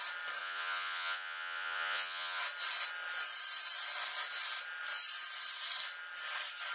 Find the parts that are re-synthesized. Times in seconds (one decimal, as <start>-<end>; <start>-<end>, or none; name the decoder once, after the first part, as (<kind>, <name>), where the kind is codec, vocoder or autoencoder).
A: 0.4-2.4 (vocoder, Vocos)